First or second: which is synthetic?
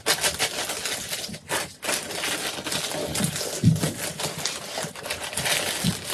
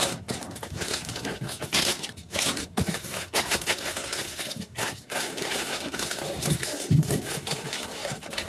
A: second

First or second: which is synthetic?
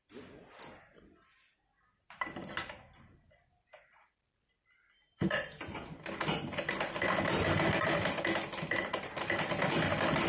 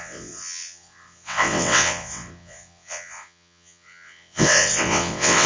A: second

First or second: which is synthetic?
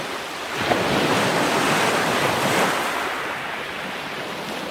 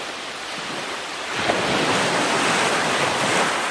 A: second